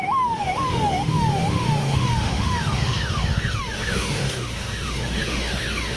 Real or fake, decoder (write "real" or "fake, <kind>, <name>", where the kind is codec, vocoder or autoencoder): fake, autoencoder, DAC-VAE